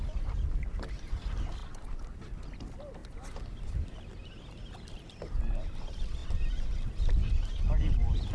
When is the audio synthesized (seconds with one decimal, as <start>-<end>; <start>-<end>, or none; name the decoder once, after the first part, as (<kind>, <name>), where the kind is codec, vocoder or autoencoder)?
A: 1.6-2.2 (vocoder, BigVGAN v2)